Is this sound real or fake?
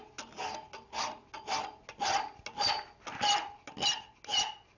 real